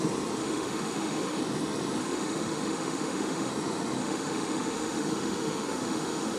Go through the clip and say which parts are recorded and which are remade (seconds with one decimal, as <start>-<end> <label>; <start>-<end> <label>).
0.0-0.4 recorded; 0.4-1.4 remade; 1.4-2.0 recorded; 2.0-3.5 remade; 3.5-4.0 recorded; 4.0-6.4 remade